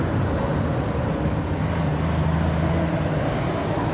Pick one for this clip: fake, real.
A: real